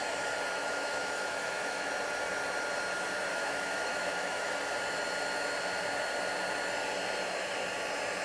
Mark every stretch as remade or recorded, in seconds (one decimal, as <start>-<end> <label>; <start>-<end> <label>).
0.0-0.6 recorded; 0.6-1.9 remade; 1.9-3.3 recorded; 3.3-4.6 remade; 4.6-8.2 recorded